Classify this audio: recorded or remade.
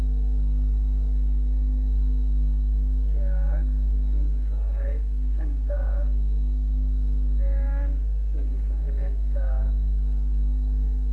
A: remade